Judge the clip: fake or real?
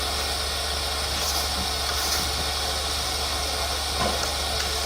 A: real